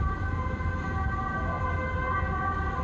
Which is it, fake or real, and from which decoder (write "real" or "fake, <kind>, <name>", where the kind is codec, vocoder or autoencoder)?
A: real